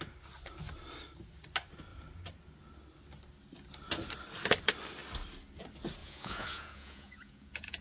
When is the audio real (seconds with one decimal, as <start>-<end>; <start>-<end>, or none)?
0.0-6.0